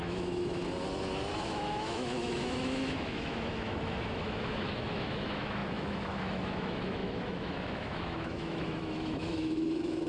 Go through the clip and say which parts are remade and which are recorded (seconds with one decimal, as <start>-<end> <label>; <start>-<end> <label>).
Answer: 0.0-0.6 remade; 0.6-1.4 recorded; 1.4-10.1 remade